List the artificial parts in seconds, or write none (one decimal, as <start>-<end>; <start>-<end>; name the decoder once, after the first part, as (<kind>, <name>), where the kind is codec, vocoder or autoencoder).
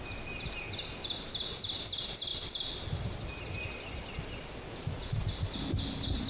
2.3-4.4 (vocoder, BigVGAN v2)